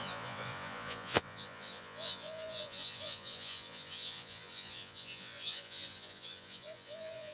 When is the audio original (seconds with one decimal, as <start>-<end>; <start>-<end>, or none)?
none